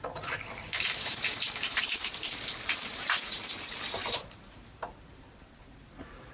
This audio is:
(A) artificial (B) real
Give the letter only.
A